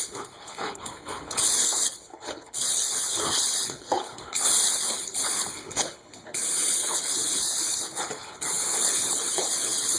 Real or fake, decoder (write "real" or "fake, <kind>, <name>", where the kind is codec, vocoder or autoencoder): fake, codec, HILCodec